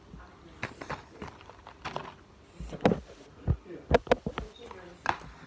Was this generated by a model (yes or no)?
no